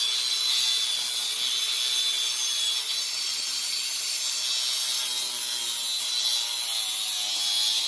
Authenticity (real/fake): real